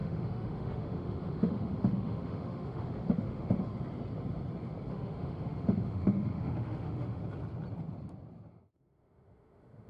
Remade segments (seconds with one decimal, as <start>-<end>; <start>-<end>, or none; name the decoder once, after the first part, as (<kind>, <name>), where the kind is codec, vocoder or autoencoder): 0.0-3.7 (autoencoder, DAC-VAE); 4.9-7.2; 8.5-9.9